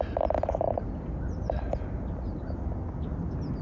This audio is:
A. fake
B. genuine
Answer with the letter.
B